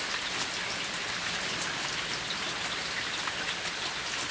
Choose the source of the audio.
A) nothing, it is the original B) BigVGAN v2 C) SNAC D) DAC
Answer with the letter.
A